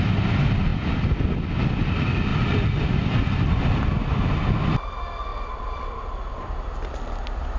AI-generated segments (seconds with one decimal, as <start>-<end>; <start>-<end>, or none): 2.3-3.6; 5.3-6.7